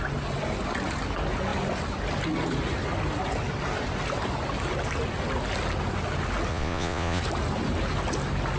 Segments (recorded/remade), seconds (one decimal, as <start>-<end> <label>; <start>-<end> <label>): 0.0-6.5 recorded; 6.5-7.2 remade; 7.2-8.6 recorded